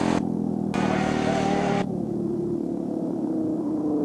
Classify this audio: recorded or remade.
recorded